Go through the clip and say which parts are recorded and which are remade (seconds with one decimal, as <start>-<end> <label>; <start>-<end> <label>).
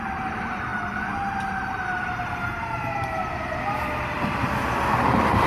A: 0.0-0.7 remade; 0.7-3.5 recorded; 3.5-5.5 remade